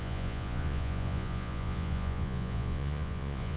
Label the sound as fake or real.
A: fake